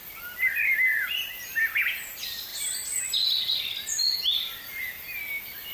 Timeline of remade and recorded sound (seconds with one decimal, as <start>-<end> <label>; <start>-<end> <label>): 0.0-2.5 recorded; 2.5-3.0 remade; 3.0-5.7 recorded